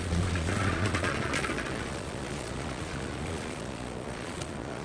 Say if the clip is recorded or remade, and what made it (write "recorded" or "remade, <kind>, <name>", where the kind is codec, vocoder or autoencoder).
remade, vocoder, Vocos